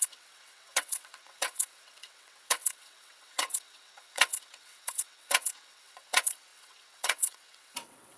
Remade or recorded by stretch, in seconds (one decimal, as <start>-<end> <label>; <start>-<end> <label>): 0.0-8.2 remade